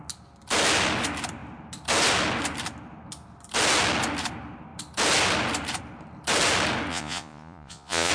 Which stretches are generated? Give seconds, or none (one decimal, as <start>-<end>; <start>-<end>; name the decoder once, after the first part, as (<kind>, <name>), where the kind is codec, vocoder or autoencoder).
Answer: 6.9-8.1 (vocoder, Vocos)